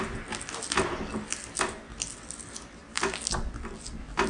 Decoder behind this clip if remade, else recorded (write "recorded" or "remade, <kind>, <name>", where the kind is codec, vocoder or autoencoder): recorded